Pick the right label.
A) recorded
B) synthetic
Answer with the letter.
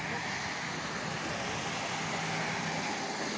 A